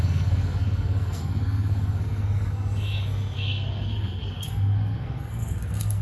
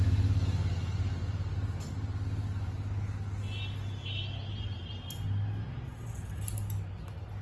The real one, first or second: second